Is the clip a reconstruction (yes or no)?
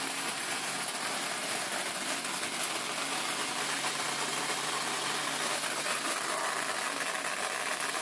no